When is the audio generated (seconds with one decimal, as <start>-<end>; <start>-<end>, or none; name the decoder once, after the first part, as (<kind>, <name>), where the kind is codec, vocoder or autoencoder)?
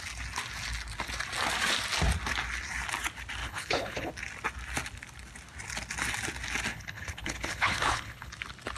3.4-4.1 (codec, HILCodec); 6.7-8.3